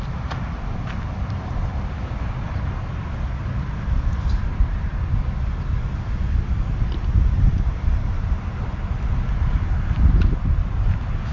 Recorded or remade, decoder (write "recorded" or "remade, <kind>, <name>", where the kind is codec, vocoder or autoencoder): recorded